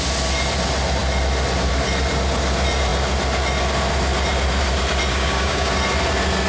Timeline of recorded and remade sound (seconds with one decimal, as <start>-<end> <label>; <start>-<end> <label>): 0.0-5.1 recorded; 5.1-5.7 remade; 5.7-6.5 recorded